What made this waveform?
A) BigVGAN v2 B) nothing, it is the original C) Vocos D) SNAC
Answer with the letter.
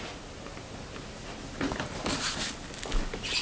B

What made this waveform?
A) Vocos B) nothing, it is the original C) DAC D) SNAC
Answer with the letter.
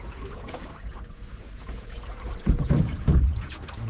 A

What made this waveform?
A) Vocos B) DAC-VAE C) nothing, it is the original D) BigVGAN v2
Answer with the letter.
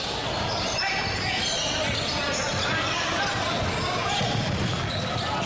C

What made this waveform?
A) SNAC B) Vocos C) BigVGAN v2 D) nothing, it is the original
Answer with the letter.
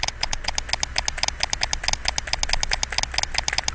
D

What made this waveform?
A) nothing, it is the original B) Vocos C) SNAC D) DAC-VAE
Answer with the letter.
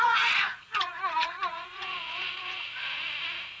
B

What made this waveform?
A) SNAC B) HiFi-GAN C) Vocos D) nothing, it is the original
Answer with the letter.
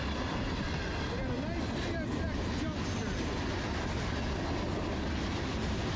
D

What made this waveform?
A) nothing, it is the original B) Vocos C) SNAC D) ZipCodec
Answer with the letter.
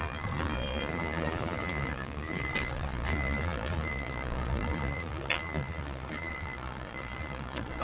B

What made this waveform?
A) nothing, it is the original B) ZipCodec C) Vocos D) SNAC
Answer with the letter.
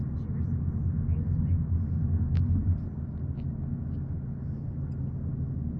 A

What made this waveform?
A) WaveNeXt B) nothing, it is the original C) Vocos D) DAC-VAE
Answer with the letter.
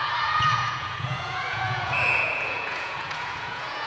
C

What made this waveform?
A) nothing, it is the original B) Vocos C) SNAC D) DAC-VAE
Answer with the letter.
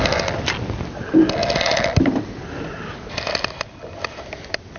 A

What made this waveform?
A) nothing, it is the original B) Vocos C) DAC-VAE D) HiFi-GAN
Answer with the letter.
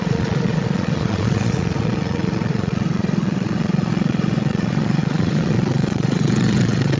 B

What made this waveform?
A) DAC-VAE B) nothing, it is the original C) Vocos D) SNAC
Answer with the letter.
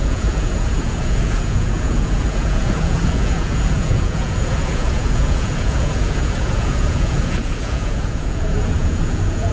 C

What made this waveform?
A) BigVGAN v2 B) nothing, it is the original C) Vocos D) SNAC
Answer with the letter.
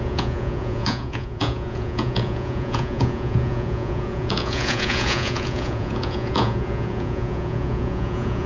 C